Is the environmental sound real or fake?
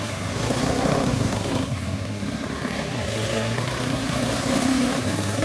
fake